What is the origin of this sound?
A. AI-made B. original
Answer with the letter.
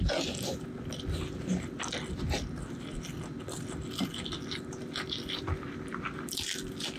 B